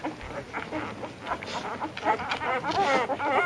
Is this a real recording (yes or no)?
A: yes